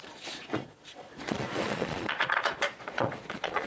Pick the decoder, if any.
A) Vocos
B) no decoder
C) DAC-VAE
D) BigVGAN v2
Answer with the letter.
A